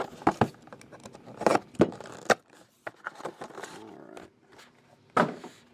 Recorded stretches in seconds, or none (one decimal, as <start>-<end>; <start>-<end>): 0.0-5.7

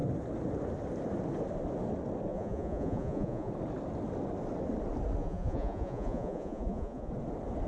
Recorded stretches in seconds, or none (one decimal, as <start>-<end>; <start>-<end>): 0.0-2.3; 3.5-5.2; 7.1-7.7

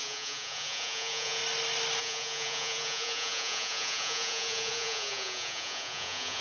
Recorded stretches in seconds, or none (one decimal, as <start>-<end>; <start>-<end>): 1.4-2.0

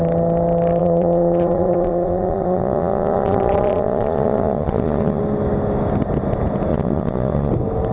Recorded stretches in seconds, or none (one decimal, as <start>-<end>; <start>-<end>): 0.0-0.8; 5.2-6.7; 7.5-7.9

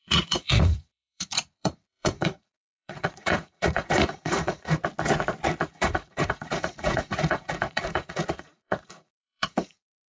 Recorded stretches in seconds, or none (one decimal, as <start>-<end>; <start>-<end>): 4.8-5.6

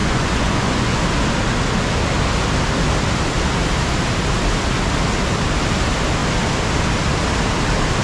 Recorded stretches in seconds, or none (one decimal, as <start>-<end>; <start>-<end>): 1.0-8.0

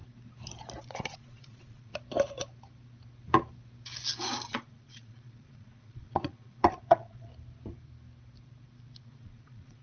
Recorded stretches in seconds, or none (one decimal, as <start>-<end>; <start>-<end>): 0.0-0.9; 1.9-4.5; 7.3-9.0

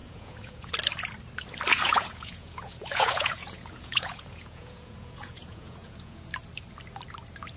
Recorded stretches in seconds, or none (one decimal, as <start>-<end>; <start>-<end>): 0.7-1.7; 6.3-7.6